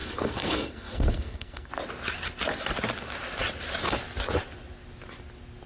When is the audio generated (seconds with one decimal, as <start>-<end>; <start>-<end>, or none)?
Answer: 0.0-1.7